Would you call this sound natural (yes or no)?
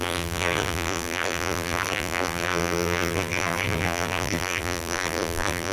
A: no